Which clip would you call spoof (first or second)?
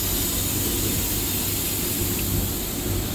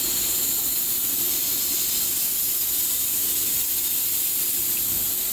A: second